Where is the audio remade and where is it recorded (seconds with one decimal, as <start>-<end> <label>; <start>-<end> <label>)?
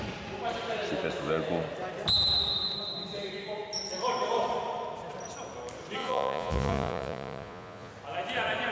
0.0-6.0 recorded; 6.0-7.9 remade; 7.9-8.7 recorded